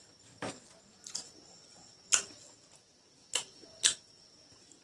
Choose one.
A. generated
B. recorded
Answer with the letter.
B